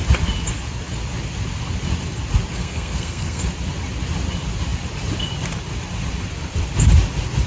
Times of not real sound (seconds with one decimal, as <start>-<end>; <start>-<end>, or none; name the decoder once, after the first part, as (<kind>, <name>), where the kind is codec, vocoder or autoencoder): 2.6-3.4 (codec, SNAC)